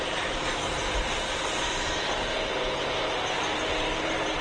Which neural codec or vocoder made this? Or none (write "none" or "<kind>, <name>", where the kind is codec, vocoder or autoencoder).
vocoder, BigVGAN v2